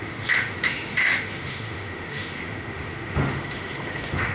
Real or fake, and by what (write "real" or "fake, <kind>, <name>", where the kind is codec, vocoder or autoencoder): fake, autoencoder, DAC-VAE